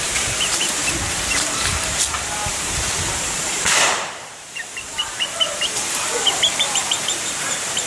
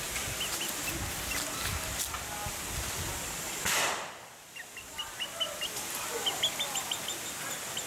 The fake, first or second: first